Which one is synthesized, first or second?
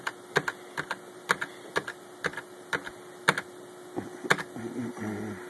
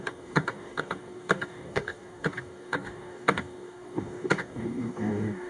second